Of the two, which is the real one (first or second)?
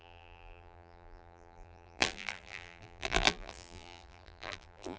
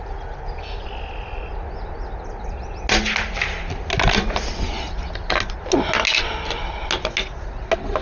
second